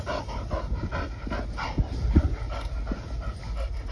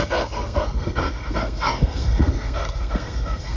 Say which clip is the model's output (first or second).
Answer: second